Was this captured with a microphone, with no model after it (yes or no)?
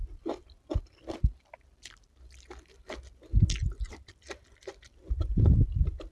yes